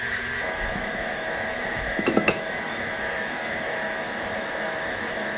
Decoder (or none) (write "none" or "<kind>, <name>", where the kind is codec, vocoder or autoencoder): autoencoder, DAC-VAE